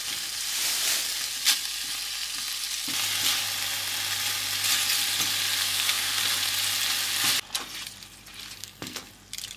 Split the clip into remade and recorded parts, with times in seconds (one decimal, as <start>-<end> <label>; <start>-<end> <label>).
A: 0.0-5.6 recorded; 5.6-6.2 remade; 6.2-8.6 recorded; 8.6-9.1 remade; 9.1-9.6 recorded